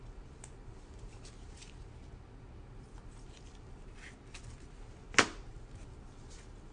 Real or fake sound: real